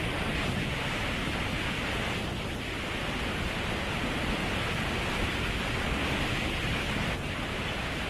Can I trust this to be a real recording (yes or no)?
yes